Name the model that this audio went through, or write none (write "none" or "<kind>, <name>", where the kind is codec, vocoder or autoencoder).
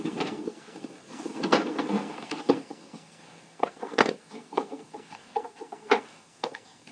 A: codec, SNAC